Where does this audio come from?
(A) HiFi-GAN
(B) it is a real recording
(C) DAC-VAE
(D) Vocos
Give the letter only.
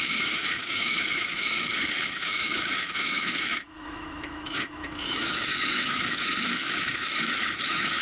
C